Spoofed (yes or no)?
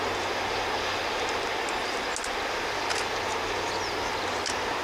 no